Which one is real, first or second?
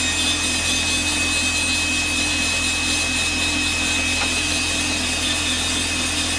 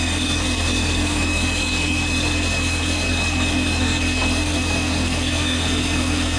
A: first